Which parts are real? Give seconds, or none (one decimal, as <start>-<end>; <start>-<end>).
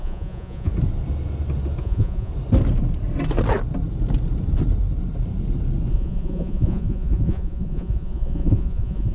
0.7-1.8; 2.3-5.9